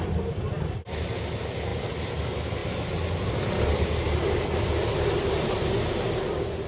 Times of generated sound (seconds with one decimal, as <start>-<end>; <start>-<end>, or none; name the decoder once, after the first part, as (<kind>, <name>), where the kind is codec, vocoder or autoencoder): none